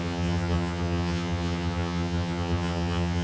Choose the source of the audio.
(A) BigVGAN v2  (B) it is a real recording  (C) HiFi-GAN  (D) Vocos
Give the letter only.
C